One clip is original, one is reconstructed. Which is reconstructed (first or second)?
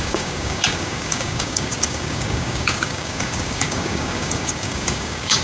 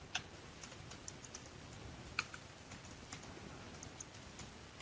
first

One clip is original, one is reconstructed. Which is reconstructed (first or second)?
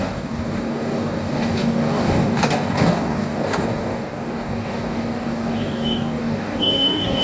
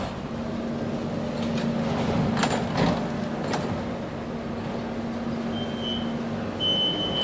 first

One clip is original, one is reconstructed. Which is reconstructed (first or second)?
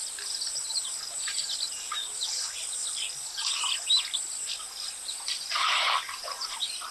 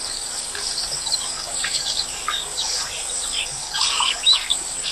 second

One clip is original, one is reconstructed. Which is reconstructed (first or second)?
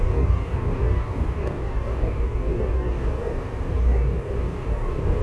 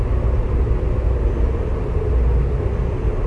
first